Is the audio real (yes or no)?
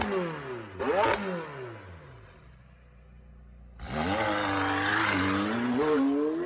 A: yes